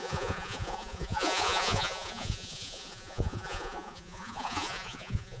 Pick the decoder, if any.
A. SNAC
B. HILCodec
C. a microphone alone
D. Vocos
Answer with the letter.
D